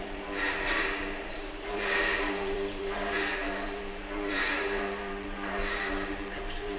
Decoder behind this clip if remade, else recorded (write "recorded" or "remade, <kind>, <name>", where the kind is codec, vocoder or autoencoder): remade, vocoder, BigVGAN v2